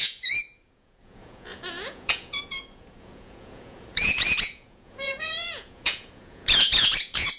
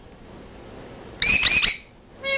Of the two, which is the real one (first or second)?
second